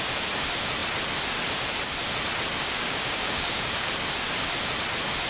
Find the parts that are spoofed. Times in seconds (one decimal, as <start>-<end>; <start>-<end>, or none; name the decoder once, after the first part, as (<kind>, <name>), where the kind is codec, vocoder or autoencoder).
2.6-3.9 (codec, DAC)